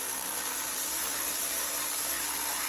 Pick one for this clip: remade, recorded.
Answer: remade